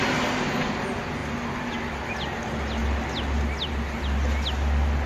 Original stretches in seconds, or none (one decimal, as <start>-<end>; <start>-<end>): 0.0-5.1